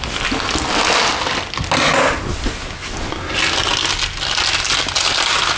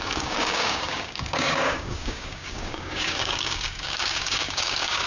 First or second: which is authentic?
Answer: first